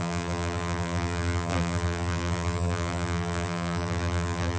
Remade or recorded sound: remade